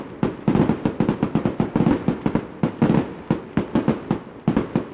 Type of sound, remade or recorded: recorded